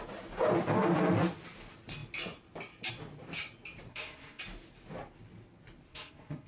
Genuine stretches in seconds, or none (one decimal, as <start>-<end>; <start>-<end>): 0.0-3.9; 4.4-5.9